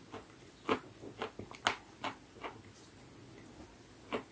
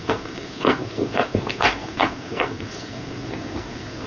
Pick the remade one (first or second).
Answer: second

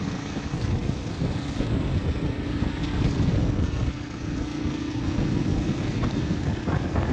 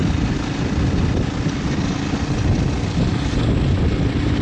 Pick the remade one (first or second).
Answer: first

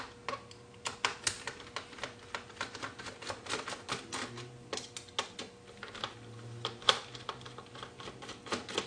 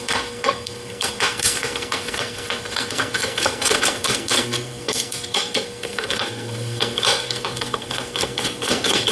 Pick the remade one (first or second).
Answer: second